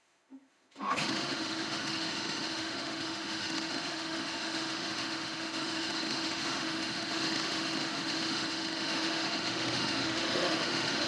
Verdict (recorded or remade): remade